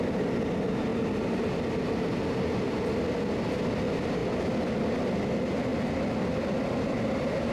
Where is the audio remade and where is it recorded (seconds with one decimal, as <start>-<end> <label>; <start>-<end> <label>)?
0.0-7.5 recorded

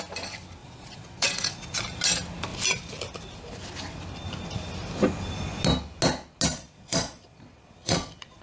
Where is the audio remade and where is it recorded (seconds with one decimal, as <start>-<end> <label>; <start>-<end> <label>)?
0.0-0.6 recorded; 0.6-1.6 remade; 1.6-6.5 recorded; 6.5-8.4 remade

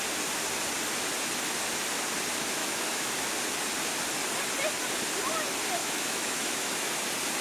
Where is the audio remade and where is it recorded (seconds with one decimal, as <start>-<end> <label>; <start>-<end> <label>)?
0.0-2.6 recorded; 2.6-3.1 remade; 3.1-5.8 recorded; 5.8-6.9 remade; 6.9-7.4 recorded

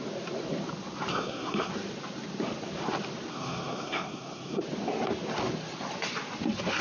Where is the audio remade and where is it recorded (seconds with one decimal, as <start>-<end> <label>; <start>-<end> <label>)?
0.0-1.1 recorded; 1.1-1.7 remade; 1.7-3.3 recorded; 3.3-4.6 remade; 4.6-6.8 recorded